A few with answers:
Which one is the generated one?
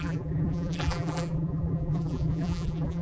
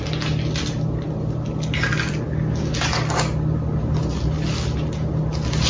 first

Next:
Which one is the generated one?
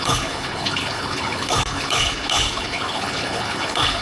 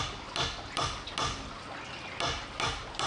first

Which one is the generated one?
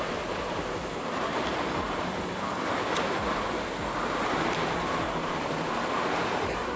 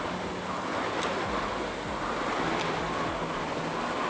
first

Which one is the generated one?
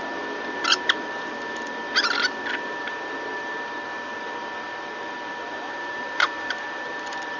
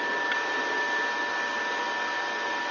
first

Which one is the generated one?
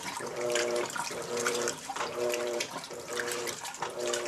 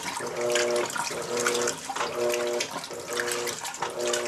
first